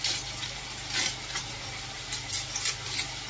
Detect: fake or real real